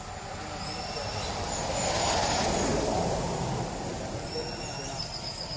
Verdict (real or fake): real